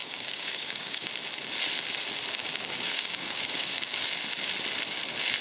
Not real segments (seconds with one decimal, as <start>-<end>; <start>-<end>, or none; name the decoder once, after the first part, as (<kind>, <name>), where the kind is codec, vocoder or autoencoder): 0.0-1.1 (codec, DAC); 2.4-4.1